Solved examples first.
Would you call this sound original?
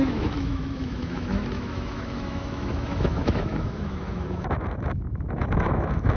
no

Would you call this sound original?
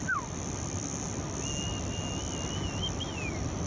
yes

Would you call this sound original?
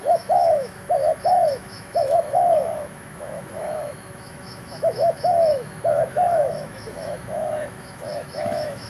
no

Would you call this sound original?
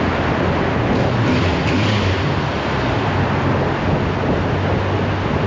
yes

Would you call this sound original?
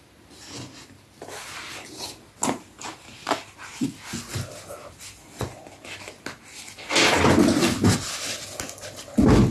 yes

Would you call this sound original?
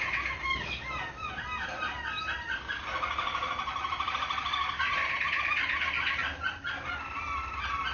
yes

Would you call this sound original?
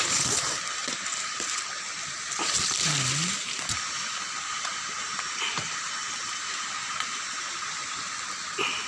yes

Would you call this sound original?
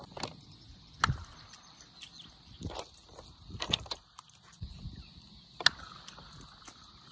yes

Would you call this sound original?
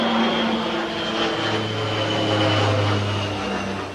yes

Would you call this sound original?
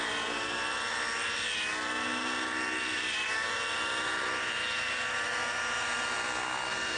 yes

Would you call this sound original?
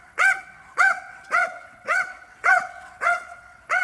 no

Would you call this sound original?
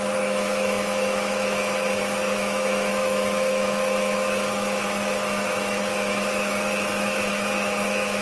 no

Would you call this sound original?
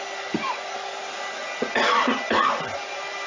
yes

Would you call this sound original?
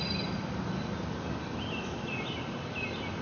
yes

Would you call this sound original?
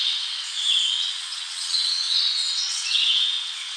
no